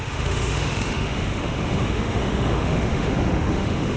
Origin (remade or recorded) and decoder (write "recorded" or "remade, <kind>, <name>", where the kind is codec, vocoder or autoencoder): remade, autoencoder, DAC-VAE